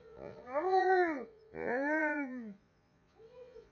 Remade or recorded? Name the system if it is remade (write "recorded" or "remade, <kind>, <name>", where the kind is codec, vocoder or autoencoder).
remade, vocoder, Vocos